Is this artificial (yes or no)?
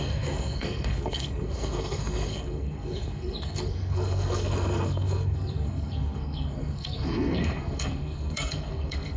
yes